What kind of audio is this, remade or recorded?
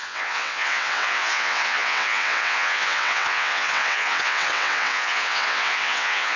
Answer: remade